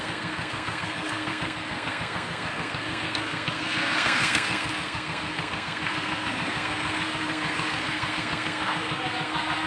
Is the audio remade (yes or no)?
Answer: yes